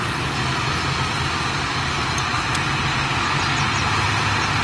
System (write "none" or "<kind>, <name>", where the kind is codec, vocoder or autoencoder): none